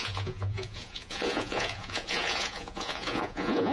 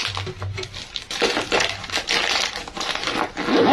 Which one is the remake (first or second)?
first